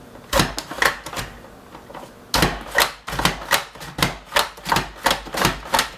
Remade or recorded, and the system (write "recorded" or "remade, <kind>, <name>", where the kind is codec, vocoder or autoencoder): recorded